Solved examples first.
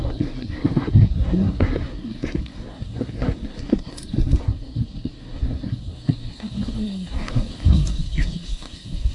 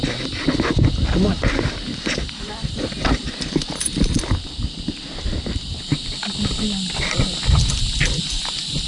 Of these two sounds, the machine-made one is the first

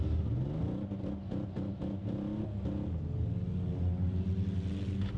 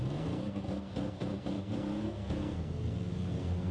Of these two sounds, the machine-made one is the second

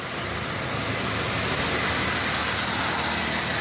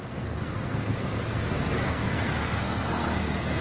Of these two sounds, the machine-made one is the second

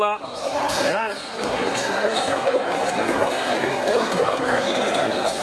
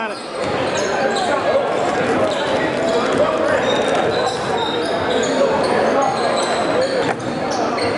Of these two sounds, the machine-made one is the first